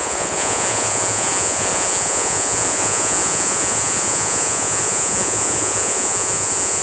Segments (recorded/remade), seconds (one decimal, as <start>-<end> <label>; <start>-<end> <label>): 0.0-6.8 remade